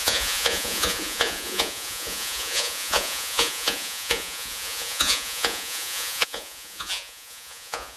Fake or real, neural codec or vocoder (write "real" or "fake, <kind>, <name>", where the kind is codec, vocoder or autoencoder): fake, vocoder, Vocos